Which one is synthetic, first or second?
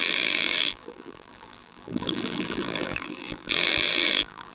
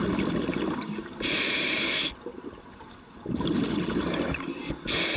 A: first